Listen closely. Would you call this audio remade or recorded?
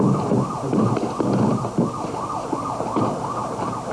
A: recorded